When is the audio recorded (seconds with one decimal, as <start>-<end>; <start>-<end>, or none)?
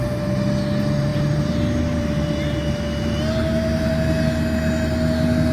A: 0.0-1.1; 2.0-3.4; 3.9-5.5